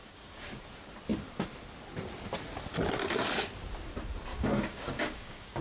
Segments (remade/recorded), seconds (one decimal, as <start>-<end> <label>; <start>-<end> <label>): 0.0-0.6 remade; 0.6-4.3 recorded; 4.3-5.6 remade